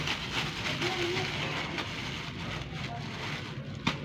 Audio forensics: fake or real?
real